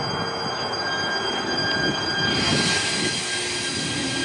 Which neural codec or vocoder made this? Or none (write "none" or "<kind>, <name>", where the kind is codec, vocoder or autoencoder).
none